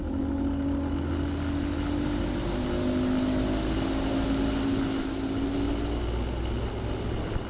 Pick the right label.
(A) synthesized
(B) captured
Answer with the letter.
B